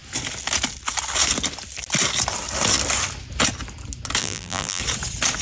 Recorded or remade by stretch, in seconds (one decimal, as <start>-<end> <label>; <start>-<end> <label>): 0.0-4.2 recorded; 4.2-4.8 remade; 4.8-5.4 recorded